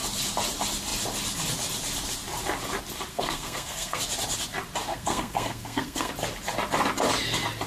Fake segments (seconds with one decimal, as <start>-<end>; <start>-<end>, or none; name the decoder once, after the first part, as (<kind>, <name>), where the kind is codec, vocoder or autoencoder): 3.1-4.0 (codec, SNAC); 4.9-6.1